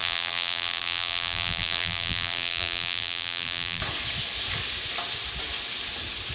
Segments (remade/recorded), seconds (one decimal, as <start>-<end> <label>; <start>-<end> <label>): 0.0-3.8 remade; 3.8-6.3 recorded